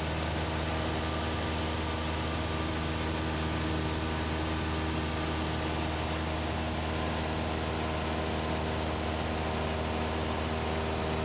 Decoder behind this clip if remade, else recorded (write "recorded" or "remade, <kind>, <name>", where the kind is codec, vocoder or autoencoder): recorded